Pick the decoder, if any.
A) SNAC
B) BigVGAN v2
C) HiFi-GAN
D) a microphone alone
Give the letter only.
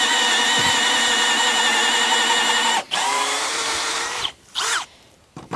B